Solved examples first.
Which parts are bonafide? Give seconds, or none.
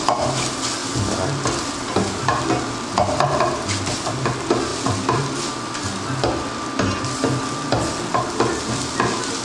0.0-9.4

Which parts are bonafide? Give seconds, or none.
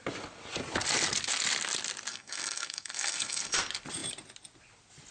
0.0-2.1; 3.6-5.1